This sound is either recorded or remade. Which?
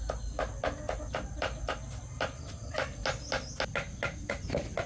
recorded